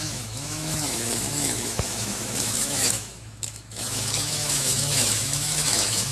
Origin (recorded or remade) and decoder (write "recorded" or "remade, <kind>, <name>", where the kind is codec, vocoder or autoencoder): remade, autoencoder, DAC-VAE